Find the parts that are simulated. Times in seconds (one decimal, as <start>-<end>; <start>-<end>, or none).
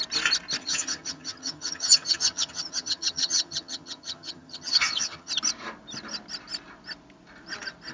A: 0.6-5.3